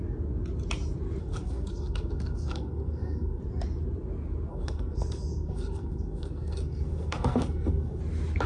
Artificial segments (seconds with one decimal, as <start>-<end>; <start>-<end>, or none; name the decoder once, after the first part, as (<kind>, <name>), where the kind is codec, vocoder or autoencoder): 1.2-3.4 (codec, SNAC); 4.5-8.0